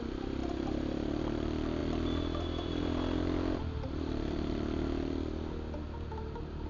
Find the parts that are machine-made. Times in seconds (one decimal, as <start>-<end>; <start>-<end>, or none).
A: 0.4-1.2